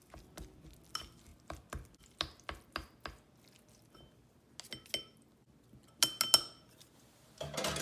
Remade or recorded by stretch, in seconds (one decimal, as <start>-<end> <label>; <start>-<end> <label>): 0.0-7.8 recorded